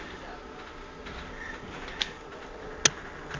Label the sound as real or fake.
real